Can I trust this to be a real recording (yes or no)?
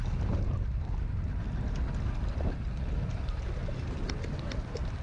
yes